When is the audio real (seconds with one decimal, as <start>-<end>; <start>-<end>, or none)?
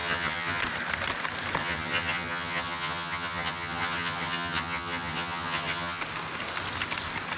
0.6-1.6; 6.0-7.4